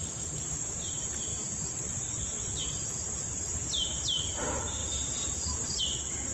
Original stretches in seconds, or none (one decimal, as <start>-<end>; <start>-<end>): 1.3-2.6